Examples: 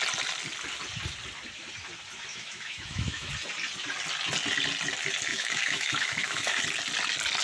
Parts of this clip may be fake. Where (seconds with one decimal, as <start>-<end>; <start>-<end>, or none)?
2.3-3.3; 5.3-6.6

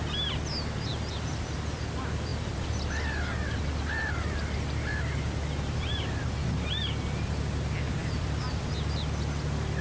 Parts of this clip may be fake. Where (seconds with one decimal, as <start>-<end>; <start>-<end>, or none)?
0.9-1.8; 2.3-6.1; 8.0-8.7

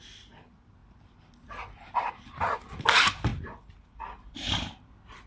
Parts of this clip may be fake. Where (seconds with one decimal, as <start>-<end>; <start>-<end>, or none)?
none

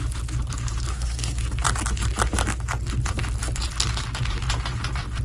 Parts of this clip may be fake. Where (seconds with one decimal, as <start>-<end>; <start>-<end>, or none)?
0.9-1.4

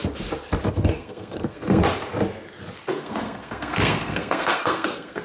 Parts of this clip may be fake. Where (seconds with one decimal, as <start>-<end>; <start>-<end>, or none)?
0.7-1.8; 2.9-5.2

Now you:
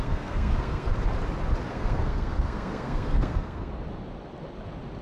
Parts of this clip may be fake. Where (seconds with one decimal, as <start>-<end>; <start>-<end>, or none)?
0.0-0.9; 1.7-3.7

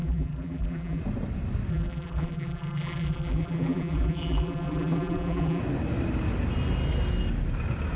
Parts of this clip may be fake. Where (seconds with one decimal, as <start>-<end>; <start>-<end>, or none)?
0.0-1.0; 1.7-5.6

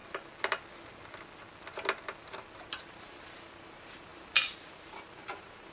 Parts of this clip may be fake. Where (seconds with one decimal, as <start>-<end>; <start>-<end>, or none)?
2.6-5.7